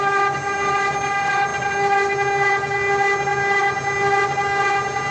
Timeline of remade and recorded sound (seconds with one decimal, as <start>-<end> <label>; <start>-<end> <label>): 0.0-5.1 recorded